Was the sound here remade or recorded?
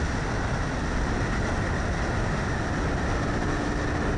recorded